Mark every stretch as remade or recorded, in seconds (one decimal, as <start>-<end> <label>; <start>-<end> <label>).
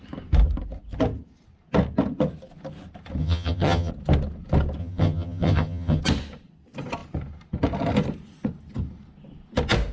0.0-3.2 recorded; 3.2-3.9 remade; 3.9-4.8 recorded; 4.8-6.0 remade; 6.0-9.9 recorded